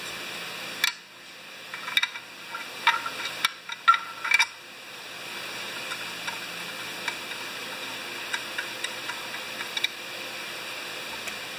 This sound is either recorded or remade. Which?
recorded